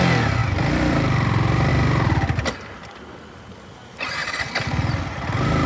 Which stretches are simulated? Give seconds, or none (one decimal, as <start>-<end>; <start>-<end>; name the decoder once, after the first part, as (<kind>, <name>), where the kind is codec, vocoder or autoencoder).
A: 0.4-1.7 (vocoder, BigVGAN v2); 4.2-5.0